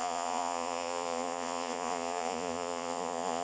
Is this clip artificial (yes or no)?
yes